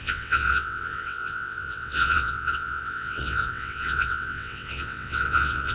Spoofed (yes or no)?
yes